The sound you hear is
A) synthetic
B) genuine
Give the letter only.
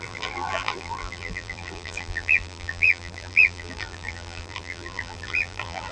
A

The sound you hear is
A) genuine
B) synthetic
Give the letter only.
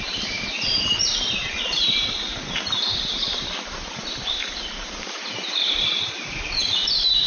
B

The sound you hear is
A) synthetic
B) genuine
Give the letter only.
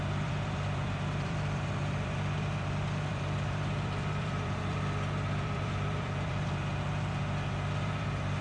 A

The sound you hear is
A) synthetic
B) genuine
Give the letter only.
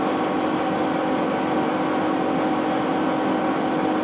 B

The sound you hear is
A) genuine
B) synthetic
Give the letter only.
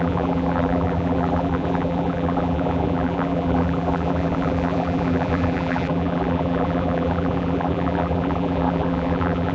B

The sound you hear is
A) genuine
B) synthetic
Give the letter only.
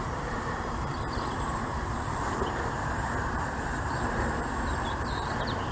B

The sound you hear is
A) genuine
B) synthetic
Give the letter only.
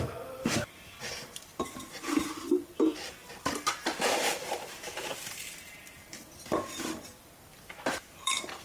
B